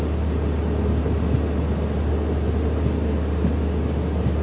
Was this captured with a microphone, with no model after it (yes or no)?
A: yes